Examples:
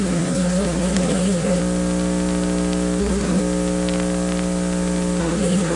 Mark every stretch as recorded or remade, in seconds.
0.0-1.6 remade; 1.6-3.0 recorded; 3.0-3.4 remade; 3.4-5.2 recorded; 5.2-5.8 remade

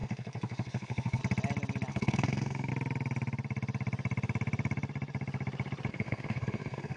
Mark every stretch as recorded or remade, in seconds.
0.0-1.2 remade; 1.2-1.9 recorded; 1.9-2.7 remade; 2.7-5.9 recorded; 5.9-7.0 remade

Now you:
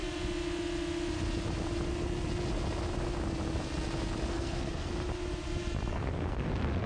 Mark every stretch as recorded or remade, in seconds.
0.0-4.3 recorded; 4.3-4.9 remade; 4.9-5.9 recorded; 5.9-6.5 remade; 6.5-6.9 recorded

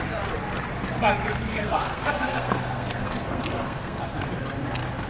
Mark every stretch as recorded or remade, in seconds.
0.0-1.5 recorded; 1.5-4.0 remade; 4.0-5.1 recorded

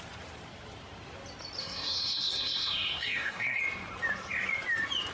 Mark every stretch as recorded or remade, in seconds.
0.0-1.6 recorded; 1.6-3.6 remade; 3.6-5.1 recorded

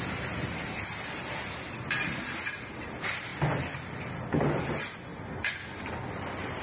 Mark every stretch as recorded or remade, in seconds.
0.0-6.6 recorded